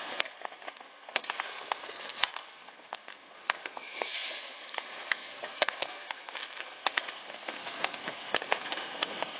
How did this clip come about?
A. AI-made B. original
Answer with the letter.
A